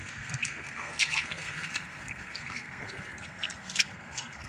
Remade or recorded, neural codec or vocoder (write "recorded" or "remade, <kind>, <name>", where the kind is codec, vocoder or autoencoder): remade, codec, SNAC